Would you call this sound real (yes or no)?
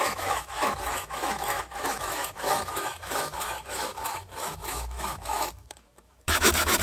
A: no